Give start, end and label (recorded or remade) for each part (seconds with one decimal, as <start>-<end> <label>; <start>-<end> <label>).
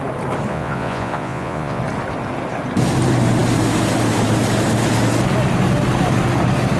0.0-0.5 recorded; 0.5-1.8 remade; 1.8-6.8 recorded